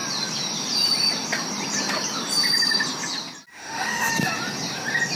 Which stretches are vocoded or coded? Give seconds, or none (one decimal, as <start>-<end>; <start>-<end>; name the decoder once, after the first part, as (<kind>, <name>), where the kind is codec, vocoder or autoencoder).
3.5-4.1 (autoencoder, DAC-VAE)

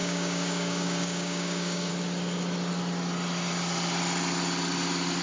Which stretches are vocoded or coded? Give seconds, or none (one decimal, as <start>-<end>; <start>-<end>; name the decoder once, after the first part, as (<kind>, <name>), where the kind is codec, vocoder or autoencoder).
0.0-1.9 (codec, DAC)

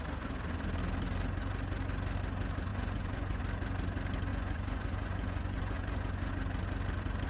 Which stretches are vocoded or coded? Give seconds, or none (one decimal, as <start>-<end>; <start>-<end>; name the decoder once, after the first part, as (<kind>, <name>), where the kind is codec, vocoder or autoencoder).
2.7-3.4 (vocoder, Vocos); 4.3-6.3

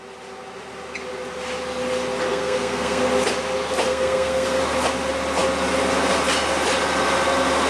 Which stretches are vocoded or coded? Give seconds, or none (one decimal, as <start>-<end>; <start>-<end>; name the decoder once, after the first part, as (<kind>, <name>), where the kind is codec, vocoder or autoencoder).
2.3-3.0 (codec, SNAC); 3.9-4.6